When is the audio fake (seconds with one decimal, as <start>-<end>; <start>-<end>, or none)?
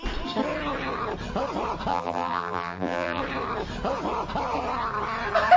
1.9-3.2